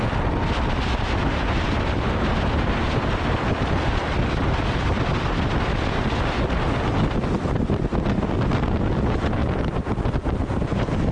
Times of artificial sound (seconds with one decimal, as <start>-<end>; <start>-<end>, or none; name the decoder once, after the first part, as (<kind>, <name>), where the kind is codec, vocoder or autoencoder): 9.4-10.1 (vocoder, BigVGAN v2)